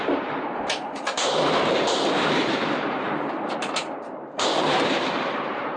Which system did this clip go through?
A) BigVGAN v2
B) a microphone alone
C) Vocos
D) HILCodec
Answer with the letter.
A